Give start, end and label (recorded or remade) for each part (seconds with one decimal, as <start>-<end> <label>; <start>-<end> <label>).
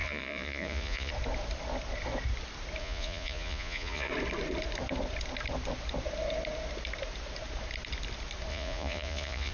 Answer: 0.0-1.1 remade; 1.1-2.8 recorded; 2.8-4.1 remade; 4.1-8.5 recorded; 8.5-9.5 remade